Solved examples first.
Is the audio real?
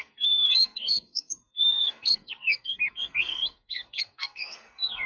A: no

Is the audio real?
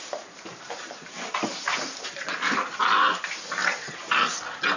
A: yes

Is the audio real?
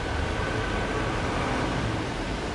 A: yes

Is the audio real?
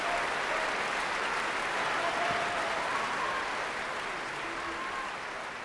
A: yes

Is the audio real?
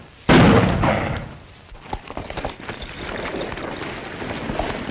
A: yes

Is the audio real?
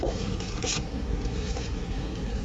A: no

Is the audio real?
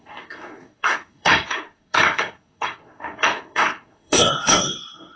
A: no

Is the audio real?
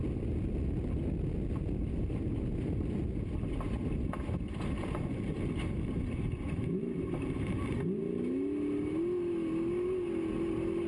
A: yes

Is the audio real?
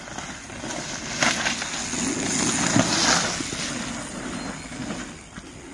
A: yes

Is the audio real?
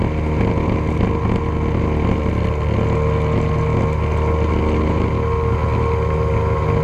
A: yes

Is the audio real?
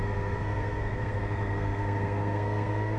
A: no